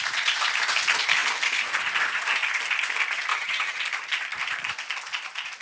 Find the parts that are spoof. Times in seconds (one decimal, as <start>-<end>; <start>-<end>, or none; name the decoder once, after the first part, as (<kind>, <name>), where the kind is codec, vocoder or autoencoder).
3.3-3.8 (vocoder, HiFi-GAN)